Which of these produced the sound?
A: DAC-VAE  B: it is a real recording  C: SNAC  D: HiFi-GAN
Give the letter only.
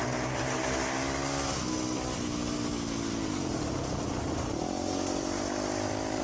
B